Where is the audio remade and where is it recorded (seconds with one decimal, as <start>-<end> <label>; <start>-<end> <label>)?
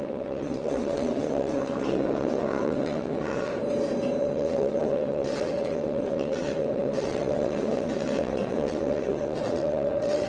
0.0-3.5 remade; 3.5-4.2 recorded; 4.2-10.3 remade